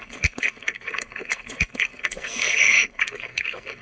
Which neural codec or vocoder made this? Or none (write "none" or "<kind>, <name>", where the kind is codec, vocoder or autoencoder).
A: codec, SNAC